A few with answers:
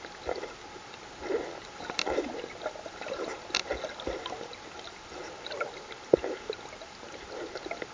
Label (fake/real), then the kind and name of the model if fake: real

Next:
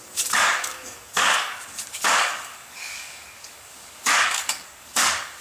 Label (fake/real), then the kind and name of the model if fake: fake, codec, DAC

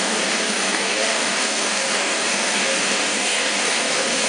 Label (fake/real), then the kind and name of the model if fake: fake, codec, DAC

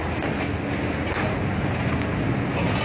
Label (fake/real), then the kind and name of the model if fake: real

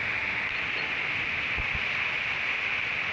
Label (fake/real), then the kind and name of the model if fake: real